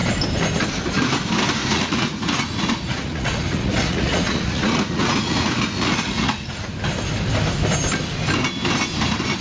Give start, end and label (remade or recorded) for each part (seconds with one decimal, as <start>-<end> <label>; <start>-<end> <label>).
0.0-1.6 recorded; 1.6-6.7 remade; 6.7-9.4 recorded